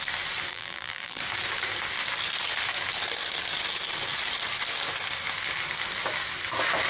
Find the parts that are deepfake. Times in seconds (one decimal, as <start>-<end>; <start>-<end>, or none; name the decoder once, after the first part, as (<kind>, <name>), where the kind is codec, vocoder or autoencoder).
0.5-1.2 (vocoder, BigVGAN v2)